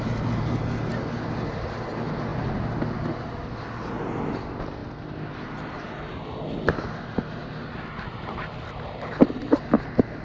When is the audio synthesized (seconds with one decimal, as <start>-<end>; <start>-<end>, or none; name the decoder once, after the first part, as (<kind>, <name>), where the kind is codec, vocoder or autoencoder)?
none